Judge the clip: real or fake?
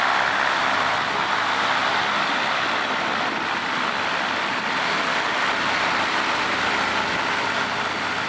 real